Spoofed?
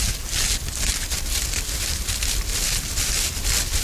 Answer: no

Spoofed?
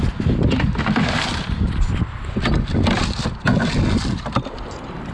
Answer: no